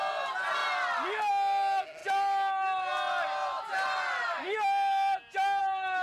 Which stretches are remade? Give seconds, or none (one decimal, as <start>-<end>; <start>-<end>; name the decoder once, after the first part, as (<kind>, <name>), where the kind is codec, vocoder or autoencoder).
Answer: none

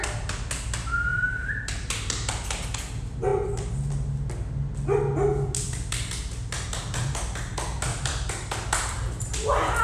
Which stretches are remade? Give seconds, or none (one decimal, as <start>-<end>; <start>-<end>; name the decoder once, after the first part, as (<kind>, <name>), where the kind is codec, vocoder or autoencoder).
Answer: 7.9-9.8 (vocoder, BigVGAN v2)

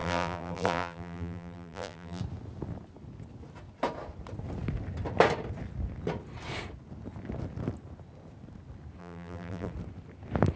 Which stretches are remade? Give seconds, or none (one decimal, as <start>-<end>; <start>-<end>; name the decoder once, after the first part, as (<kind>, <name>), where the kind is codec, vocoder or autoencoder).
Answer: 0.0-2.2 (vocoder, BigVGAN v2); 9.0-9.7

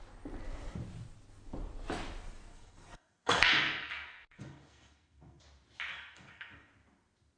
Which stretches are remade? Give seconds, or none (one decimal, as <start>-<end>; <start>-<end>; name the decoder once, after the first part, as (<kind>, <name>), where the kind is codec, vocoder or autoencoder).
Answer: 2.5-5.4 (codec, SNAC); 5.9-6.7

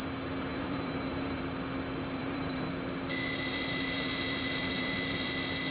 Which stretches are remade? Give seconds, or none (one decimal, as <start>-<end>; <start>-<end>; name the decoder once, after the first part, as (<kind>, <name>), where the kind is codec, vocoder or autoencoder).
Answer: 0.5-1.4 (vocoder, BigVGAN v2); 2.2-2.7; 3.5-5.3

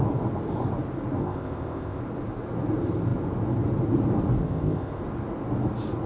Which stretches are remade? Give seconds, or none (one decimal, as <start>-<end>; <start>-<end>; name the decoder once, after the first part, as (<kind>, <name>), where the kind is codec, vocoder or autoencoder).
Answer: 1.2-2.0 (codec, ZipCodec); 4.4-5.0